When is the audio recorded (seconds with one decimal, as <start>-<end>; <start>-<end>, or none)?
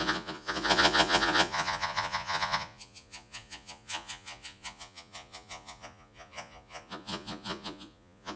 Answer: none